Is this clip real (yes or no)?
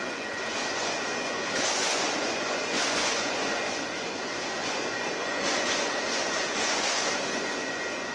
no